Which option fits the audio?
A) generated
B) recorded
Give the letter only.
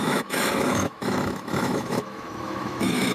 A